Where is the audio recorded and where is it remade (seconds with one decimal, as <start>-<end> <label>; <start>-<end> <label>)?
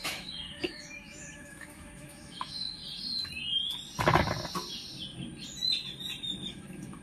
0.0-2.8 remade; 2.8-6.5 recorded; 6.5-7.0 remade